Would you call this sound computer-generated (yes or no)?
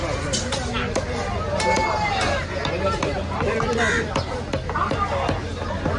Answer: no